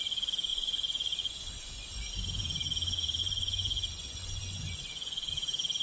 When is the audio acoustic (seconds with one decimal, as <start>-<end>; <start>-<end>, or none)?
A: 0.0-0.5; 2.1-3.2; 5.3-5.8